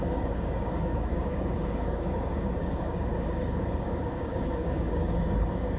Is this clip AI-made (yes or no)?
yes